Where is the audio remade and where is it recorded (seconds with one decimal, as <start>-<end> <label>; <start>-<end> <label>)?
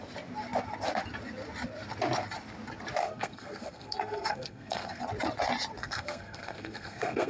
0.0-3.0 recorded; 3.0-5.0 remade; 5.0-5.8 recorded; 5.8-7.3 remade